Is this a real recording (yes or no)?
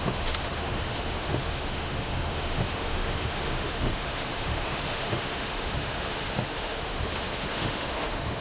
no